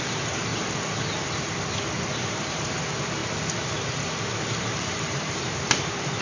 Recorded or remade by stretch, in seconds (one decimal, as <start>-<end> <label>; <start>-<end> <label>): 0.0-0.5 remade; 0.5-2.5 recorded; 2.5-3.2 remade; 3.2-4.6 recorded; 4.6-6.2 remade